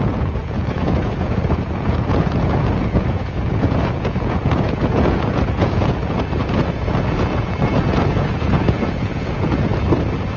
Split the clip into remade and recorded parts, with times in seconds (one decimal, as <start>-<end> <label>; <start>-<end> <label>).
0.0-9.7 remade; 9.7-10.4 recorded